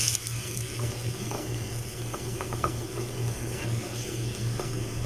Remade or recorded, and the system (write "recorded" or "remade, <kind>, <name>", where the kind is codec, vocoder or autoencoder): remade, codec, SNAC